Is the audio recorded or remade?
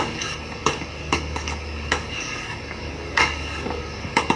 remade